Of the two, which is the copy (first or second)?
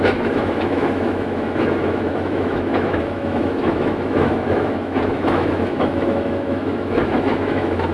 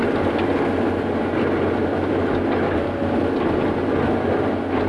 first